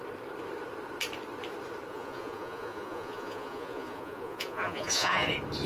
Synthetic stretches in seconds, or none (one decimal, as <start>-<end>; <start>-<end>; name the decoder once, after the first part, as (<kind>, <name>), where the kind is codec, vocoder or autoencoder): 1.9-5.3 (vocoder, Vocos)